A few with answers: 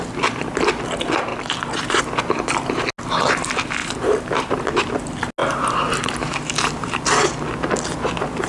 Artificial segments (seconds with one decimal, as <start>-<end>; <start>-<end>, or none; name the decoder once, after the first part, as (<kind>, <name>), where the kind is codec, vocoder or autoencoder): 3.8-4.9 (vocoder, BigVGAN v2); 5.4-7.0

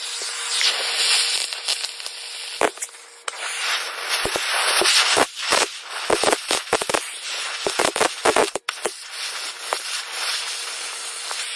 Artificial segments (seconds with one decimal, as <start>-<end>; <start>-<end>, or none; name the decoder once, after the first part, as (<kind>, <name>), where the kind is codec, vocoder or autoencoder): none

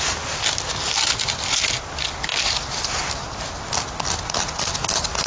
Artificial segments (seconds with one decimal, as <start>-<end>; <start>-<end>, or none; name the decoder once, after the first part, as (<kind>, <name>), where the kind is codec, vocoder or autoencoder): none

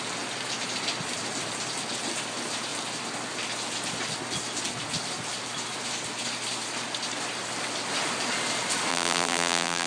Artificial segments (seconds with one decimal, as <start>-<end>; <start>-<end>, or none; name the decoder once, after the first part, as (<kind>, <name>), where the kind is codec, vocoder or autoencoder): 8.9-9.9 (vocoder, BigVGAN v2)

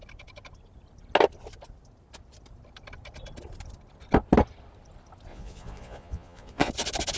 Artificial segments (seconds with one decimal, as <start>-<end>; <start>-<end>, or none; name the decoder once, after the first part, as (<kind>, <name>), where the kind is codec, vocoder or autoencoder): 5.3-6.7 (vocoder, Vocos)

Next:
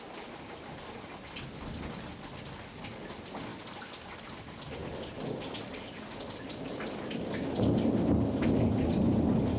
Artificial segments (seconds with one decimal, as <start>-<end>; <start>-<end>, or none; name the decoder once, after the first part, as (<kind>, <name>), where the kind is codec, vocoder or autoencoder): none